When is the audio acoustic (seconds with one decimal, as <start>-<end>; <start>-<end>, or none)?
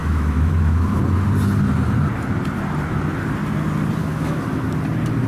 1.0-4.0; 4.7-5.3